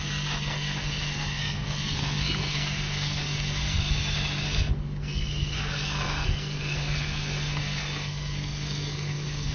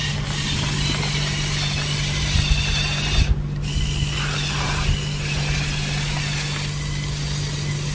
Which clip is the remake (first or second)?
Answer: first